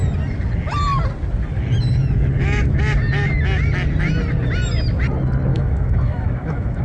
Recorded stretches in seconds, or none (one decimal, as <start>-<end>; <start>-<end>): 0.0-5.5